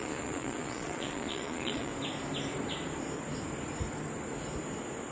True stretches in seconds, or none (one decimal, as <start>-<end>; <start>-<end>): 1.9-5.1